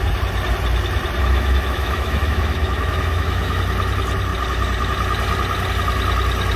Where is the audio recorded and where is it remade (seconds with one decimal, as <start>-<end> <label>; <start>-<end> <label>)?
0.0-1.2 recorded; 1.2-3.6 remade; 3.6-6.6 recorded